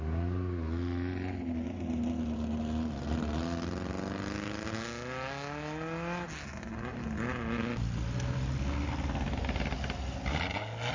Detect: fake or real real